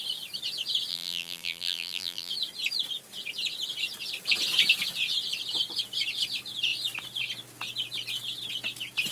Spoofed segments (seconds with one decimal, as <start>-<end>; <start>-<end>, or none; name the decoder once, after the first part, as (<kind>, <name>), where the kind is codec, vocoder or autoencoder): 0.9-2.3 (vocoder, BigVGAN v2)